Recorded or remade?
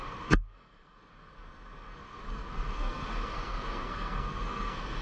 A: remade